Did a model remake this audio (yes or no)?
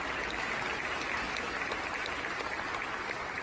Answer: no